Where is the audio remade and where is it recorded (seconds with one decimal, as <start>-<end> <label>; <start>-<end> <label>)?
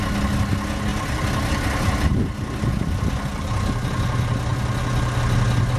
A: 0.0-5.8 recorded